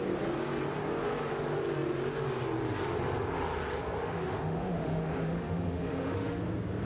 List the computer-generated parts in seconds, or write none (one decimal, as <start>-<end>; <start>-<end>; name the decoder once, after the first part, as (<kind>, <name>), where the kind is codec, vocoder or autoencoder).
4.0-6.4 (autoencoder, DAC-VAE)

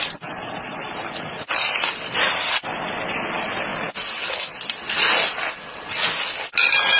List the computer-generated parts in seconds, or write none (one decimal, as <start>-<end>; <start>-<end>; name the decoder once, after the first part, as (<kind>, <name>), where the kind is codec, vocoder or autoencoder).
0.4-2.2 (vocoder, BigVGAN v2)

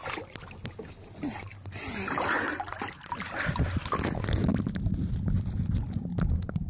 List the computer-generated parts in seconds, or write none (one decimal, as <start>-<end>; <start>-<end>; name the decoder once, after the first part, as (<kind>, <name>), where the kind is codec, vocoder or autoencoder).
none

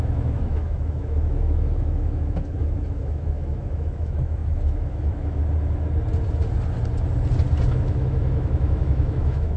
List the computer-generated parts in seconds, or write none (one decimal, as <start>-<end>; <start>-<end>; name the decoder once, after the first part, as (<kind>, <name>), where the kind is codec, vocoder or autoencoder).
0.0-5.4 (autoencoder, DAC-VAE); 7.7-9.6

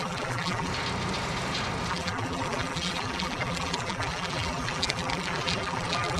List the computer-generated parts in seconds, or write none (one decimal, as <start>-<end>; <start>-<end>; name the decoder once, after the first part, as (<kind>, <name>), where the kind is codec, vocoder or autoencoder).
0.0-0.7 (vocoder, BigVGAN v2); 1.9-6.2